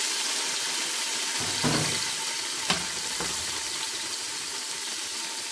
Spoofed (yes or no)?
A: no